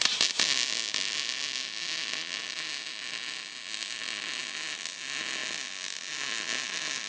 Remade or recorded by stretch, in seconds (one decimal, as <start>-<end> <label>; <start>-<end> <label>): 0.0-7.1 recorded